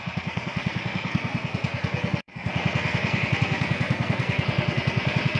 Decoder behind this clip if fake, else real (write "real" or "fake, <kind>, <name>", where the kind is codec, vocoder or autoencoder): fake, codec, SNAC